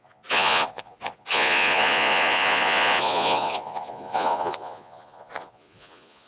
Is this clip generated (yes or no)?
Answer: yes